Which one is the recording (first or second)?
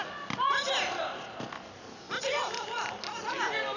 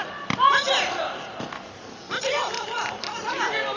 first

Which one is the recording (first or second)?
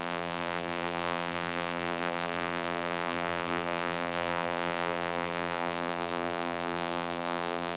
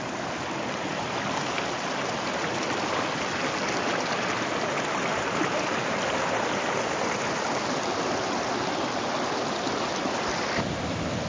second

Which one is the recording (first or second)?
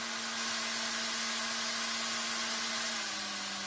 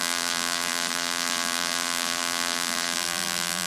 first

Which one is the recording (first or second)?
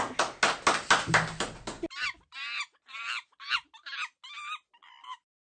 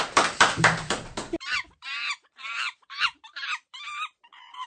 first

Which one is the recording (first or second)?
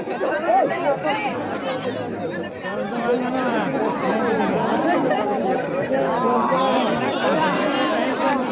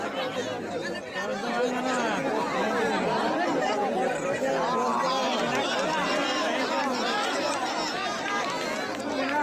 second